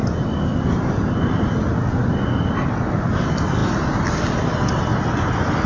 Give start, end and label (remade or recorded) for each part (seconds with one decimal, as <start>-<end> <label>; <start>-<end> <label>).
0.0-5.7 recorded